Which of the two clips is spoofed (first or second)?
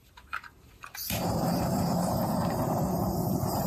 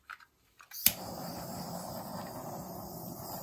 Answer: first